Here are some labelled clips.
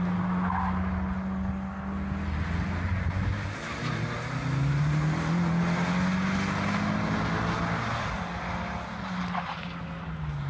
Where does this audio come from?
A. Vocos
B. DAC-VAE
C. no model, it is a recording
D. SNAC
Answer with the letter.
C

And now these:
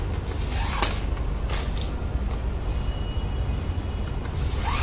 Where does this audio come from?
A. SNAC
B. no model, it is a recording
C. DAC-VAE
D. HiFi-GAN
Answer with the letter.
B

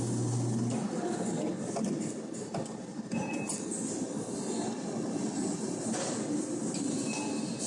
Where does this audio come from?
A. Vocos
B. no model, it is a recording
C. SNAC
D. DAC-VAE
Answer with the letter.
B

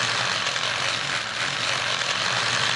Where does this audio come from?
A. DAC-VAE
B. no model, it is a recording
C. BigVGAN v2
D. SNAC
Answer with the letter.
B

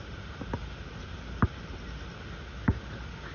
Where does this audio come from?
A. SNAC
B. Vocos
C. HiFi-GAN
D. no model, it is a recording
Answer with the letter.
D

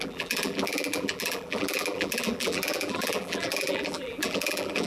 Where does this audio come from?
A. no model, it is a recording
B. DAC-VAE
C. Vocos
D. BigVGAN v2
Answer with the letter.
D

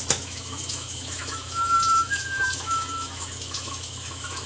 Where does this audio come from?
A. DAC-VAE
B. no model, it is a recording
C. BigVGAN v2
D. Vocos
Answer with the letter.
A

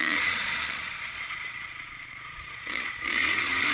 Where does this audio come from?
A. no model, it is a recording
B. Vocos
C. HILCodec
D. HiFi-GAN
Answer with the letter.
B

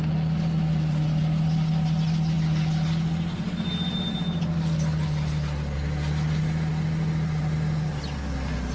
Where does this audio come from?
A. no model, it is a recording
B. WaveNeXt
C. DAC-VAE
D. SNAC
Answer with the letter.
A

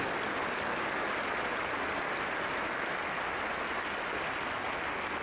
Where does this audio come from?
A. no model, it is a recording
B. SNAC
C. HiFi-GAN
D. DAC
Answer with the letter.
A